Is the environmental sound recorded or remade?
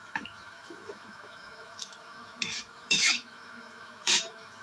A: remade